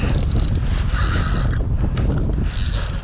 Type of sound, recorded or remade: recorded